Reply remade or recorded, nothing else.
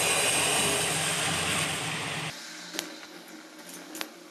recorded